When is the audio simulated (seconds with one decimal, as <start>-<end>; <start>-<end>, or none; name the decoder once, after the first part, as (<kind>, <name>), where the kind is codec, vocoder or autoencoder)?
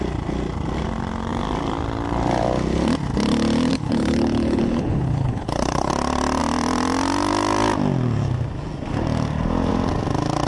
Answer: 3.7-5.9 (codec, HILCodec)